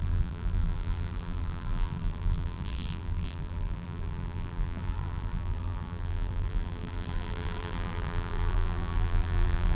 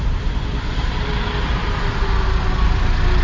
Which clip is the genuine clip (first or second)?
second